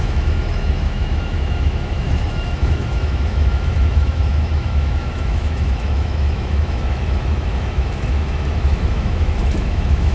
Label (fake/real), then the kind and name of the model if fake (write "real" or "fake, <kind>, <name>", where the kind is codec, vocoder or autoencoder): fake, autoencoder, DAC-VAE